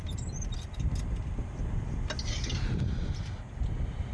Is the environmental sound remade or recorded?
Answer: recorded